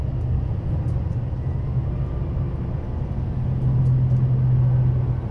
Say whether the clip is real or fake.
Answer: real